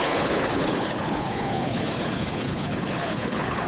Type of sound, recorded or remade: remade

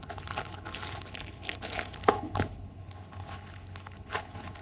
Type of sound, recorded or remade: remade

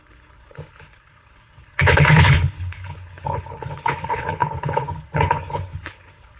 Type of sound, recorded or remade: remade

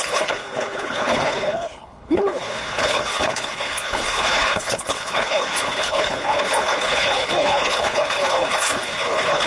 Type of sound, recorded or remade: remade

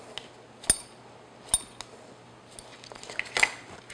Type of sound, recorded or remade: recorded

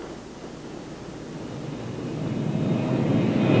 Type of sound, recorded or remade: recorded